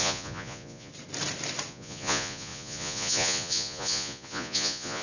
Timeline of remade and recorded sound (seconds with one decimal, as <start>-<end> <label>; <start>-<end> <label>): 0.0-0.9 remade; 0.9-1.7 recorded; 1.7-5.0 remade